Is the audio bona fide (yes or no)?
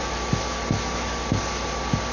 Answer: yes